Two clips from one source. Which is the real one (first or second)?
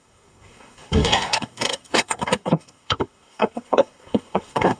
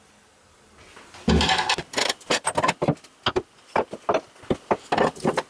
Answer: second